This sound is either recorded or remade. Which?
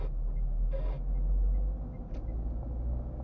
recorded